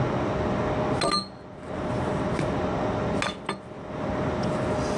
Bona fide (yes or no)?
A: yes